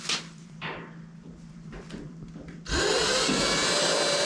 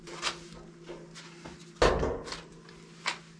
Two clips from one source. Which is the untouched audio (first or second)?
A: second